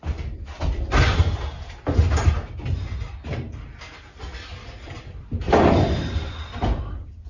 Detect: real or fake real